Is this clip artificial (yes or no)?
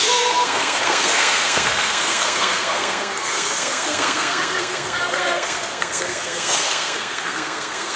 yes